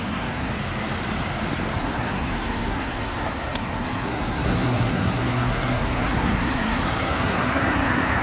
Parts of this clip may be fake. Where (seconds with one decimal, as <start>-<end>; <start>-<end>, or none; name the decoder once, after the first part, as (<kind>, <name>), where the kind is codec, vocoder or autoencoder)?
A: 0.0-0.5 (codec, SNAC); 1.8-8.2